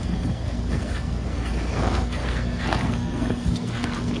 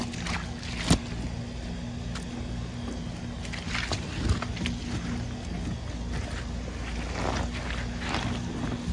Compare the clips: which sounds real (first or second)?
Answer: second